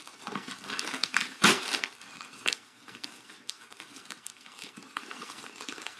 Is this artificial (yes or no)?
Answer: yes